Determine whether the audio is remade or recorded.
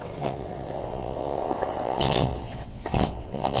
remade